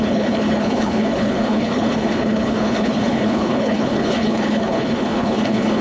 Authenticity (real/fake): fake